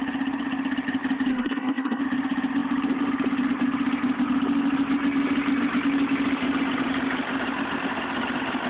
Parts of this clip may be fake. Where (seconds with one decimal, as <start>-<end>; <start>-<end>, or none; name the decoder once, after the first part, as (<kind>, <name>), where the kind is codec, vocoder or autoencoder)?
1.3-2.0 (codec, SNAC)